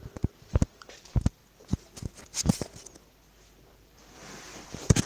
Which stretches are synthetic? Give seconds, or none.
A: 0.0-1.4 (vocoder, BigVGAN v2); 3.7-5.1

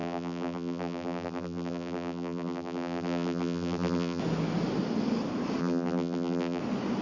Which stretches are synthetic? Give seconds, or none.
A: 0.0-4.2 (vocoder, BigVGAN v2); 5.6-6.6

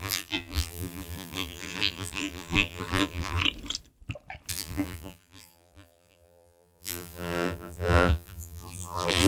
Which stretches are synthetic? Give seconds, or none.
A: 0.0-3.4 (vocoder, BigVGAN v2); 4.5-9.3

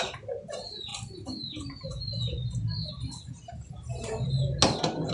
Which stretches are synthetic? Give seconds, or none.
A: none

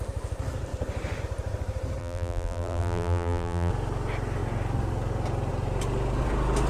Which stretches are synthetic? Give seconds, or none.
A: 2.0-3.7 (vocoder, BigVGAN v2)

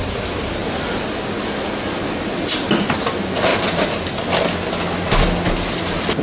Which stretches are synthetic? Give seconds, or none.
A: 3.5-4.2 (vocoder, BigVGAN v2)

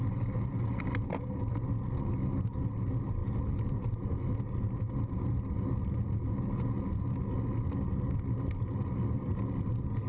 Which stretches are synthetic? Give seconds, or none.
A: none